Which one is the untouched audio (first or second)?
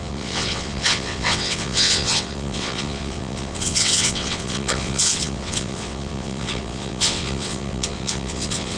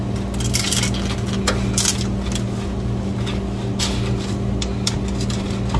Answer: second